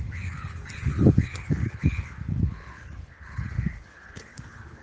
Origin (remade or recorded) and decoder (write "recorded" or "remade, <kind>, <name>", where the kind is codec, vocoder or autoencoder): remade, codec, HILCodec